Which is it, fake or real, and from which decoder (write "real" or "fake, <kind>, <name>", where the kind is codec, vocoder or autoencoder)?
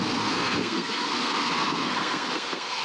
fake, codec, SNAC